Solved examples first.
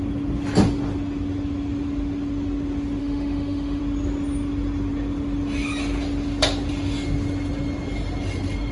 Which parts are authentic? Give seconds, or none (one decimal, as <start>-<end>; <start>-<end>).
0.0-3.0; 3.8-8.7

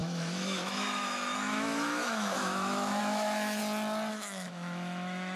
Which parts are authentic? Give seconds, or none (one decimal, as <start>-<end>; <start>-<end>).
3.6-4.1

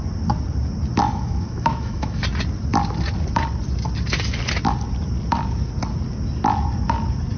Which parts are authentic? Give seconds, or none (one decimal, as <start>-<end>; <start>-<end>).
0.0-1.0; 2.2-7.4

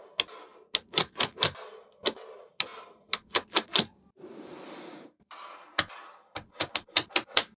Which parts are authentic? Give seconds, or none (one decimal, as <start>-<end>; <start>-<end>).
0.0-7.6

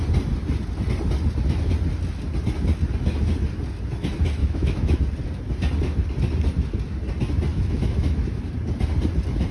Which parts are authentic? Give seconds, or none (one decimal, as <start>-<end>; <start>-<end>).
0.0-4.4; 5.0-7.5; 8.4-9.5

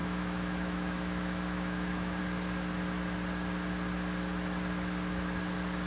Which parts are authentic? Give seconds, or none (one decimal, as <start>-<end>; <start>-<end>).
2.2-5.9